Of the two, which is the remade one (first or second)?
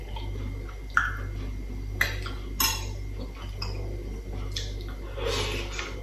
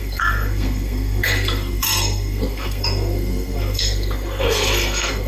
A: second